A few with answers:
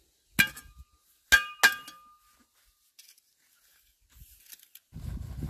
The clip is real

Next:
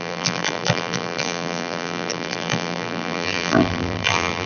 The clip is fake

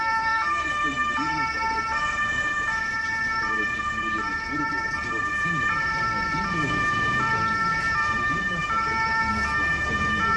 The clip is real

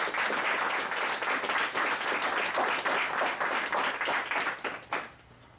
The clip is real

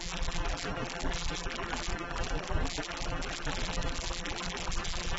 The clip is fake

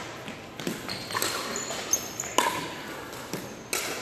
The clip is real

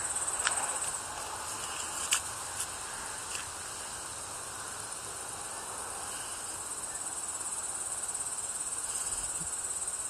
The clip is real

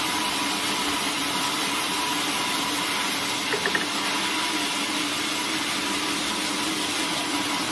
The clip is real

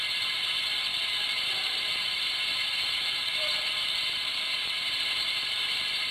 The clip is fake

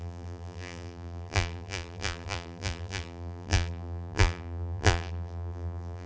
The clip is fake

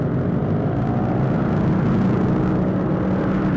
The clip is real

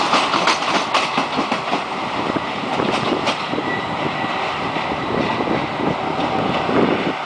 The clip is real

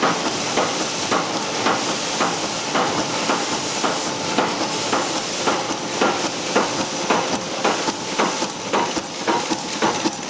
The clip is fake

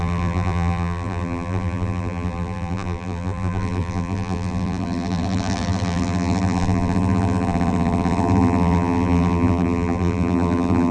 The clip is fake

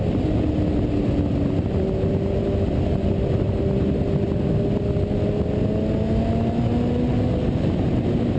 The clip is real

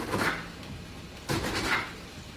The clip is real